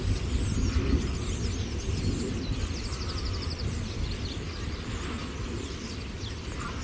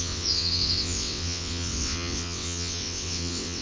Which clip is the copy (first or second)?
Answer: second